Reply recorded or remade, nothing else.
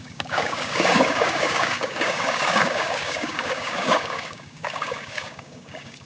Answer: remade